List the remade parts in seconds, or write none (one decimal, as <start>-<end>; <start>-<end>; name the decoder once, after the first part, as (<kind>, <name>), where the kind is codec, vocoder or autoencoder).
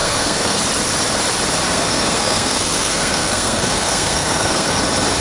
0.0-0.6 (codec, SNAC); 1.7-4.8